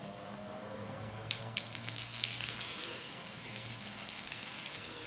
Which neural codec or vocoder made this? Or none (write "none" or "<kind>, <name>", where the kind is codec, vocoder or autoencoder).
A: codec, SNAC